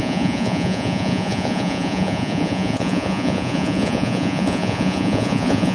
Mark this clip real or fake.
fake